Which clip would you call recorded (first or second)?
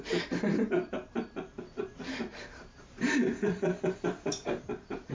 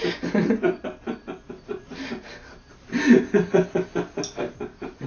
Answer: second